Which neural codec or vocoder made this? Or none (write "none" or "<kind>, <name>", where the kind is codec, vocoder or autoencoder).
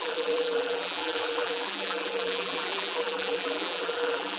vocoder, BigVGAN v2